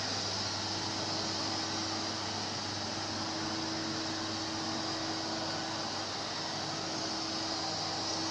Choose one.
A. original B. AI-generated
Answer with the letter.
A